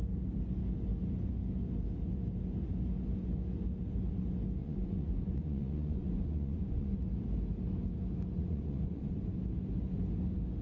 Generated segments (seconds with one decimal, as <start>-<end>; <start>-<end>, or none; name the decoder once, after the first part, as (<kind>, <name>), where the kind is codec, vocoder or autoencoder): 4.6-7.0 (vocoder, Vocos); 8.4-9.2

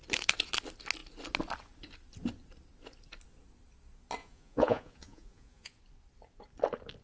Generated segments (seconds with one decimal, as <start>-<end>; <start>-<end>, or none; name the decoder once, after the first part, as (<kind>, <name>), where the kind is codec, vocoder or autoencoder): 4.2-5.8 (vocoder, Vocos)

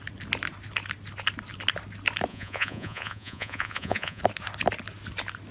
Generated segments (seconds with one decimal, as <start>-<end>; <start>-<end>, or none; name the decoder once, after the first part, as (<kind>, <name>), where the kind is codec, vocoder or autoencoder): 2.3-4.2 (vocoder, Vocos)

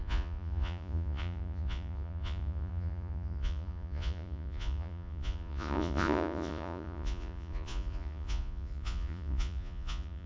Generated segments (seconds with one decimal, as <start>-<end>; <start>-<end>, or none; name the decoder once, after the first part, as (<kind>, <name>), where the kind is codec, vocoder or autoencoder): 0.0-10.3 (vocoder, Vocos)

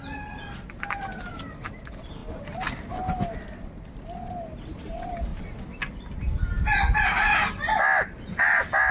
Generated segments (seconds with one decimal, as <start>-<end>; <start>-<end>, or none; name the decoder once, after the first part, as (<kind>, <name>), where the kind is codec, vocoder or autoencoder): none

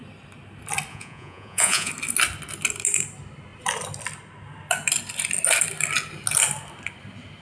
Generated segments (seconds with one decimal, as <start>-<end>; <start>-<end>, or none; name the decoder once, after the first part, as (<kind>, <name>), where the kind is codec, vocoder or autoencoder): 0.9-1.9 (vocoder, Vocos)